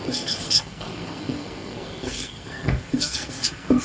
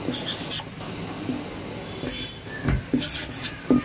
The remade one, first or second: first